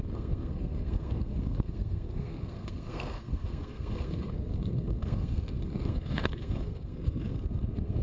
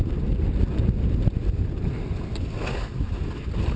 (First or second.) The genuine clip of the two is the second